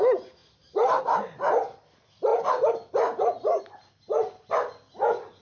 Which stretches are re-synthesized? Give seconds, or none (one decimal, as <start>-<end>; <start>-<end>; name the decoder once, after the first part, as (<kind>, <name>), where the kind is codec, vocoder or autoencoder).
none